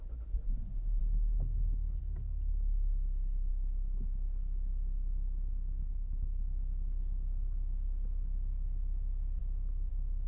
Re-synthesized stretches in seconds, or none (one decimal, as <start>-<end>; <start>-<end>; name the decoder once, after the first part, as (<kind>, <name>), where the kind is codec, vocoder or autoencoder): 1.0-2.0 (codec, HILCodec); 5.8-6.4